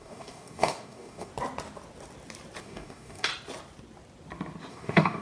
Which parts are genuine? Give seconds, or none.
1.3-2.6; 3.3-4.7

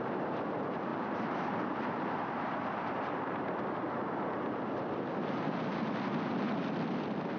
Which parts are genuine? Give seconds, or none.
0.0-0.9; 3.6-7.4

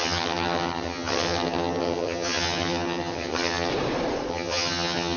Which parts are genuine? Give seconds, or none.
3.7-4.3

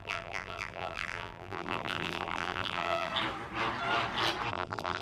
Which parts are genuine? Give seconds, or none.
3.1-4.5

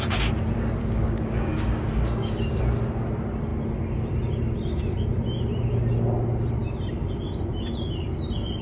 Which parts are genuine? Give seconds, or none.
0.0-0.8; 2.6-8.6

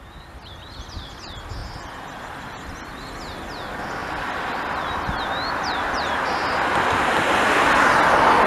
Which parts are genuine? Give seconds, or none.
0.0-8.5

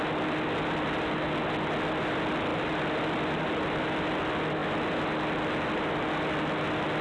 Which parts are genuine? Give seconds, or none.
0.0-7.0